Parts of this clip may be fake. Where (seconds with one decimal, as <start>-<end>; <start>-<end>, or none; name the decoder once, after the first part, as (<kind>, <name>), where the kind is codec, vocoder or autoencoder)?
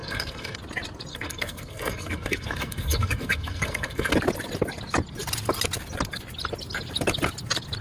0.0-0.6 (codec, SNAC); 1.1-4.1